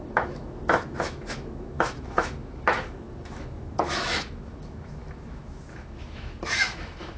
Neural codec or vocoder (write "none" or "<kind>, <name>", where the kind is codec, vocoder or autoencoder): autoencoder, DAC-VAE